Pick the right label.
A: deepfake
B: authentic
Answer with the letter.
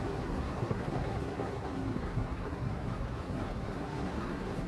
A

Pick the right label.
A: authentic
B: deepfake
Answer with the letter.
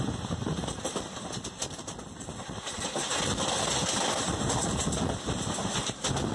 A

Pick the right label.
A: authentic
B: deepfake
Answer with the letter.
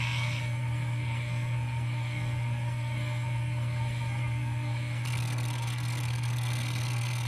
B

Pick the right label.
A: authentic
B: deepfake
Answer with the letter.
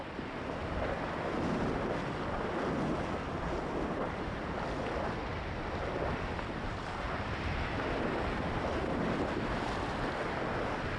A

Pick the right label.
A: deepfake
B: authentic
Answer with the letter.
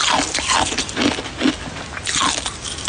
B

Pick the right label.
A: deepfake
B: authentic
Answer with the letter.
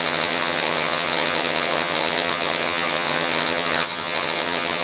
A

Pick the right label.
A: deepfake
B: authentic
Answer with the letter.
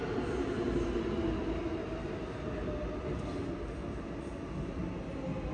B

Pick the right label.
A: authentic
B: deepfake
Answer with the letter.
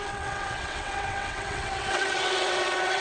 B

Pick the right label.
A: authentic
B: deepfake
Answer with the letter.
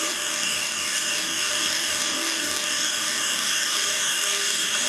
B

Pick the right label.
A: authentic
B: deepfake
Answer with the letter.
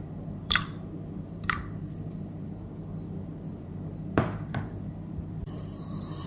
B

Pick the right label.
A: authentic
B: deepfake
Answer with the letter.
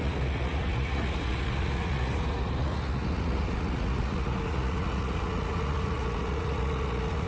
B